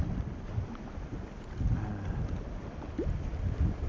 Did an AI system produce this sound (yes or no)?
no